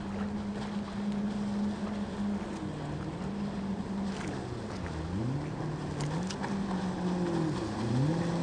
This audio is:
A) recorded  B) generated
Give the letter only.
A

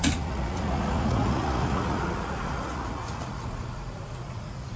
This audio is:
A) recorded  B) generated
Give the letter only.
B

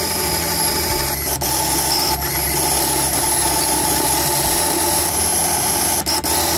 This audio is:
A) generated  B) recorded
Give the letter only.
B